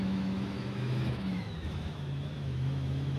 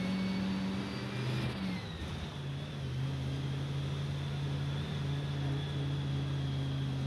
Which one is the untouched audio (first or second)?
second